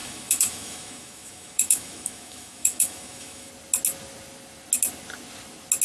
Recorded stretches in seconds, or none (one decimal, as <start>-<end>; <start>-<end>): 3.5-5.8